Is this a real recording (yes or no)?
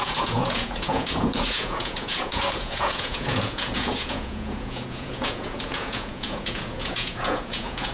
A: no